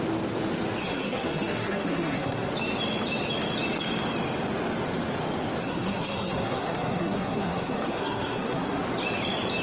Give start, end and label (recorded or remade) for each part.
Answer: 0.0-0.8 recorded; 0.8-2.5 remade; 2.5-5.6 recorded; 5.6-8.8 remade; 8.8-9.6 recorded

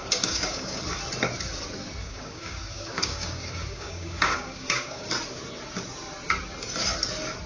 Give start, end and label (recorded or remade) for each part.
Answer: 0.0-0.8 remade; 0.8-2.0 recorded; 2.0-5.1 remade; 5.1-7.5 recorded

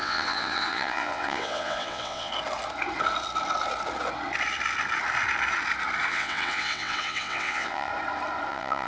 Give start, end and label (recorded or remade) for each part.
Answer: 0.0-2.3 remade; 2.3-6.1 recorded; 6.1-7.9 remade; 7.9-8.5 recorded; 8.5-8.9 remade

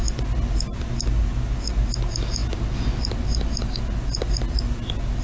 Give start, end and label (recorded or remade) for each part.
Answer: 0.0-5.2 recorded

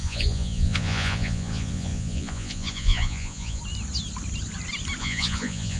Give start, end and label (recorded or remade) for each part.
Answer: 0.0-3.6 remade; 3.6-5.0 recorded; 5.0-5.8 remade

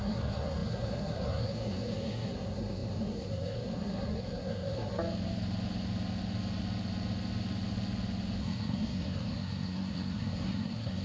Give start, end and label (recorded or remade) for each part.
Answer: 0.0-4.9 remade; 4.9-8.4 recorded; 8.4-11.0 remade

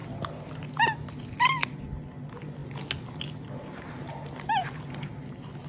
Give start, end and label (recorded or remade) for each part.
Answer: 0.0-5.7 recorded